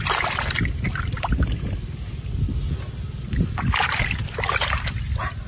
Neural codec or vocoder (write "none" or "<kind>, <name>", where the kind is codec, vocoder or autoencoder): none